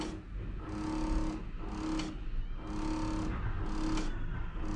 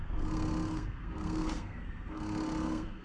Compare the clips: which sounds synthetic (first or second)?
second